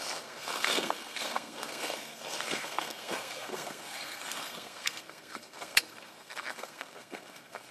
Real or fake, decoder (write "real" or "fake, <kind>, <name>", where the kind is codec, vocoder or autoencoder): fake, codec, SNAC